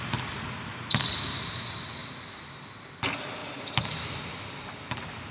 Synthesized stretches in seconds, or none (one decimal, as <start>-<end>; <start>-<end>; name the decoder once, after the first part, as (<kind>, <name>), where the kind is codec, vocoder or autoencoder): 2.0-2.8 (vocoder, BigVGAN v2); 3.4-4.2